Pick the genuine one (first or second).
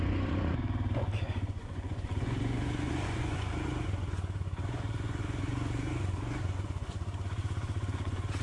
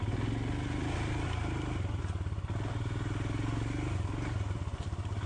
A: second